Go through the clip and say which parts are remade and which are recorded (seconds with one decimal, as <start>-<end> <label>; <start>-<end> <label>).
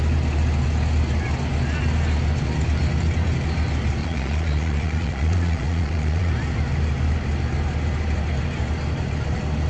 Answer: 0.0-4.0 recorded; 4.0-6.3 remade; 6.3-9.7 recorded